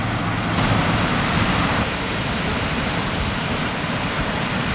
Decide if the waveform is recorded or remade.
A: recorded